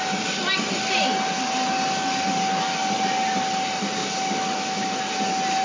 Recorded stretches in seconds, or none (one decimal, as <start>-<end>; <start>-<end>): 0.0-4.0; 5.0-5.6